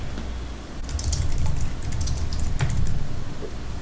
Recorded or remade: recorded